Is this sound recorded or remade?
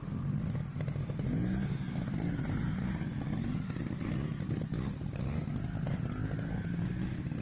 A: recorded